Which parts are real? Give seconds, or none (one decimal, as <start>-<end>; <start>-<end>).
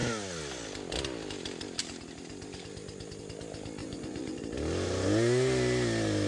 0.0-3.8; 4.4-6.3